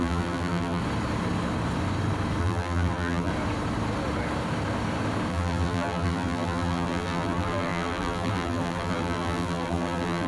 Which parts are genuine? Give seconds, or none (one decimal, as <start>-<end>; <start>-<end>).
0.8-2.4; 3.3-5.3